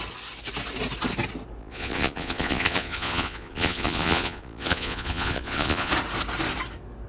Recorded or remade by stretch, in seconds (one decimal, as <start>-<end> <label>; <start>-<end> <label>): 0.0-1.6 recorded; 1.6-5.9 remade; 5.9-7.1 recorded